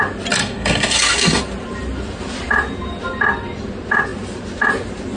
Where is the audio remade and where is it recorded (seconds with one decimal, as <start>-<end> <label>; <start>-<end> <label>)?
0.0-0.4 recorded; 0.4-1.4 remade; 1.4-5.2 recorded

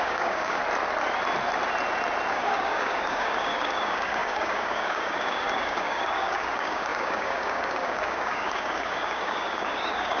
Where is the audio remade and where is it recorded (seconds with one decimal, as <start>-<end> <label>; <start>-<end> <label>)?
0.0-0.6 remade; 0.6-2.3 recorded; 2.3-10.2 remade